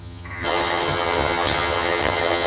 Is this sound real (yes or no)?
no